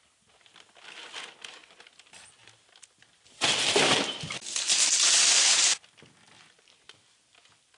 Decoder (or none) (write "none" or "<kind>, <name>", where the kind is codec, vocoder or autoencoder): none